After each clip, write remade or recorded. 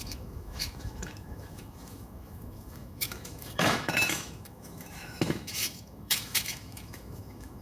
remade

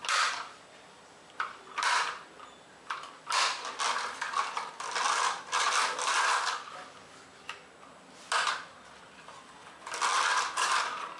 recorded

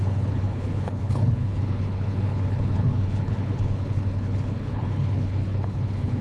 remade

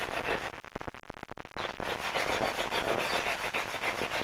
recorded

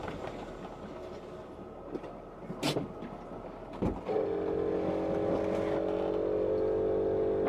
recorded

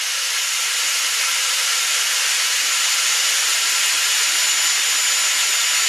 recorded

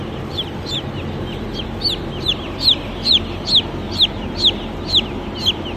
recorded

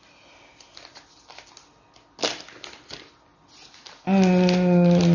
recorded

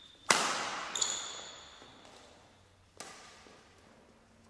recorded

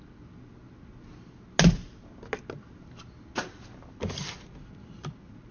recorded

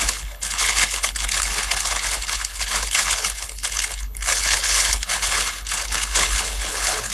remade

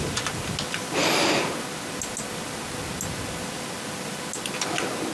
recorded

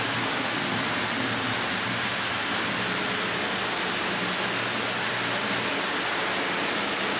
recorded